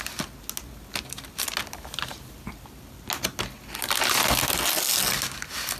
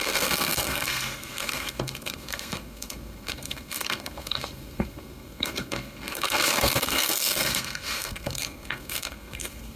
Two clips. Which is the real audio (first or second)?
first